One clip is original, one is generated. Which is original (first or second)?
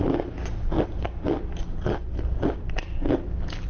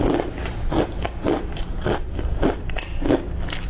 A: first